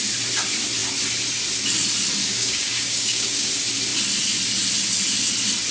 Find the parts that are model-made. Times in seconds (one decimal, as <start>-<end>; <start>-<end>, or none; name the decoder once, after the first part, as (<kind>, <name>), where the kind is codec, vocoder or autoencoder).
2.2-3.5 (codec, DAC)